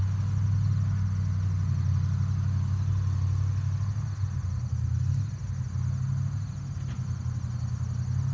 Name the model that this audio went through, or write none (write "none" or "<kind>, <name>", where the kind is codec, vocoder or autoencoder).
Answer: none